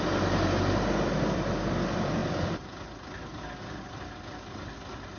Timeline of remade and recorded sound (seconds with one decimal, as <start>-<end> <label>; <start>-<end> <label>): 0.0-5.2 recorded